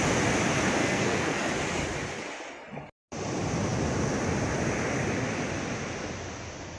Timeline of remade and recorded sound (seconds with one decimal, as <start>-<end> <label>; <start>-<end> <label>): 0.0-0.8 recorded; 0.8-1.5 remade; 1.5-6.8 recorded